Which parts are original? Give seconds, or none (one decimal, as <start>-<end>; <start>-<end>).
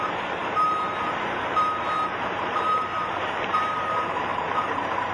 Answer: none